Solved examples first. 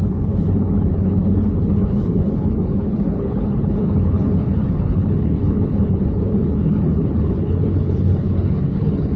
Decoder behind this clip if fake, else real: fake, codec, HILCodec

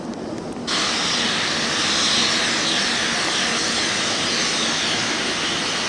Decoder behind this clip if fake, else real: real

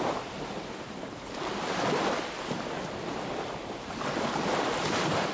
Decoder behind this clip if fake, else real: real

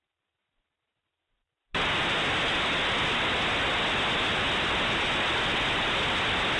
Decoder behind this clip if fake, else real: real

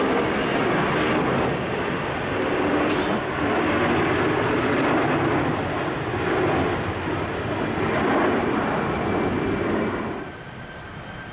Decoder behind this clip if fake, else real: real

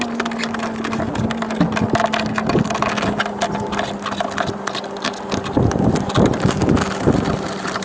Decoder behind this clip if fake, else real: real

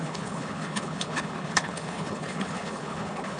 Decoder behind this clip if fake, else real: fake, codec, HILCodec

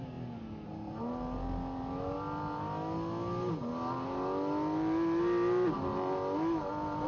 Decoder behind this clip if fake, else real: real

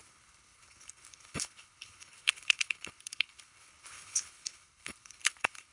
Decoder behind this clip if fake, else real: fake, codec, HILCodec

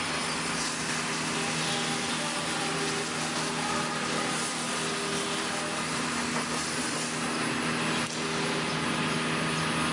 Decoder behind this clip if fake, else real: real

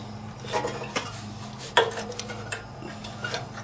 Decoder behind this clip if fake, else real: real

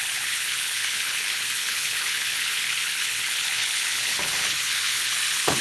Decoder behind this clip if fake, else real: fake, codec, HILCodec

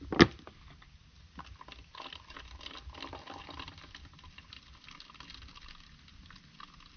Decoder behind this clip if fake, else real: real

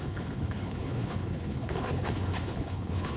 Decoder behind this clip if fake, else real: fake, codec, HILCodec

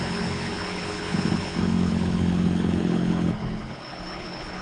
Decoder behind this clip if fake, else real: fake, codec, HILCodec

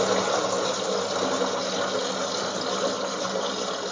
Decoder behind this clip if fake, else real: real